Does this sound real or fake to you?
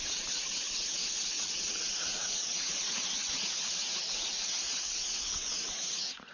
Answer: fake